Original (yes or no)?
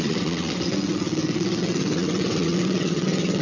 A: no